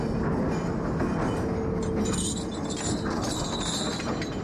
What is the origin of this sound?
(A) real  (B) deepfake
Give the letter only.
A